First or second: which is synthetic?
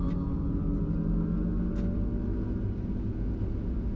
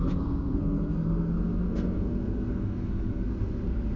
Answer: second